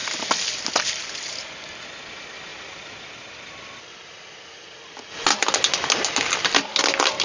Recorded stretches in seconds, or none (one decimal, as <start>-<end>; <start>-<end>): 0.0-7.2